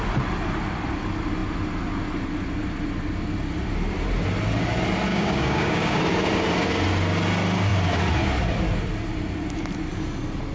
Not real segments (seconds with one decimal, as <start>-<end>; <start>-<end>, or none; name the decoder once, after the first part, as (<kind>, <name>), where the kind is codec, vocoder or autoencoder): 5.1-6.0 (codec, DAC)